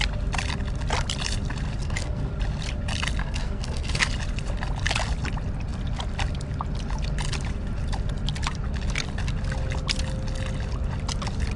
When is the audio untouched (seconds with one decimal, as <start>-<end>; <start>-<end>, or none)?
0.0-1.8; 2.3-3.2; 4.1-11.6